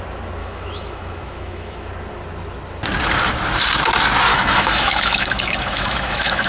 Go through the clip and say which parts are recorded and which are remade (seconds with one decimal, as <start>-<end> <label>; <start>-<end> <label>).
0.0-0.4 recorded; 0.4-1.9 remade; 1.9-4.3 recorded; 4.3-6.5 remade

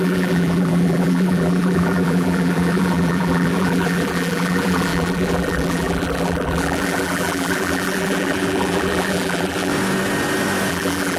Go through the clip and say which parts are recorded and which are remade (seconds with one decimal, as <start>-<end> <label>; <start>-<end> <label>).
0.0-9.7 remade; 9.7-10.7 recorded; 10.7-11.2 remade

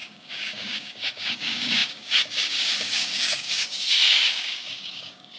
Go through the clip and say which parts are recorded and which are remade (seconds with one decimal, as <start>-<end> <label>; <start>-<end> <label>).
0.0-5.4 remade

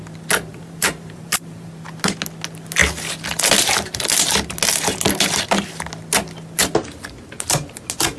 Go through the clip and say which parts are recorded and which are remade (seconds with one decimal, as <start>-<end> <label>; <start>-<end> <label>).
0.0-0.5 recorded; 0.5-1.7 remade; 1.7-8.2 recorded

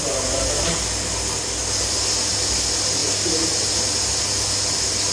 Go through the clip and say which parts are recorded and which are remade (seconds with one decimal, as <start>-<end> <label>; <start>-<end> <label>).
0.0-5.1 recorded

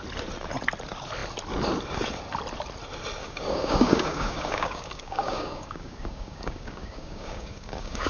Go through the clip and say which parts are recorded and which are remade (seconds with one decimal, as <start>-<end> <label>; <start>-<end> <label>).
0.0-3.2 recorded; 3.2-8.1 remade

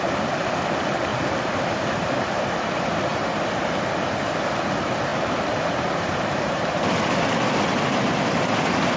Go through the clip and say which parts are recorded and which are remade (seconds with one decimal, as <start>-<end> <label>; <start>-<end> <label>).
0.0-1.1 recorded; 1.1-2.7 remade; 2.7-3.1 recorded; 3.1-3.6 remade; 3.6-5.1 recorded; 5.1-6.8 remade; 6.8-9.0 recorded